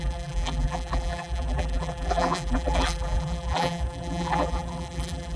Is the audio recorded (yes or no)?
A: no